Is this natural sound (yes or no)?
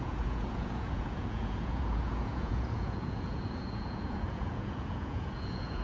no